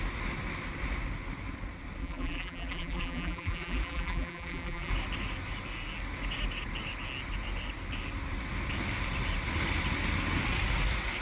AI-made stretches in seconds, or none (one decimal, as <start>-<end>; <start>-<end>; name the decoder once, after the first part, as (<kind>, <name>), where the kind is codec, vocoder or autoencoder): 2.0-4.9 (vocoder, BigVGAN v2)